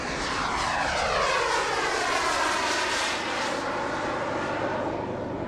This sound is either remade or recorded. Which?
recorded